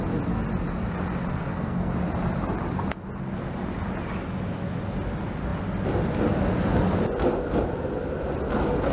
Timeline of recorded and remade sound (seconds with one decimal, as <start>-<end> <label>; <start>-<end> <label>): 0.0-1.3 recorded; 1.3-1.9 remade; 1.9-8.9 recorded